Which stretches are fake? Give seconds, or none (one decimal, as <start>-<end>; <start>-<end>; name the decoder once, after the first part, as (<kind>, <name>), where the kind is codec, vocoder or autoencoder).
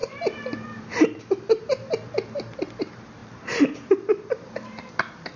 0.0-1.7 (vocoder, BigVGAN v2); 2.8-5.4